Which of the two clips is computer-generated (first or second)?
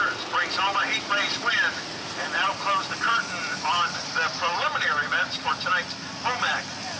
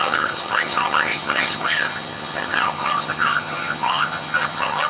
second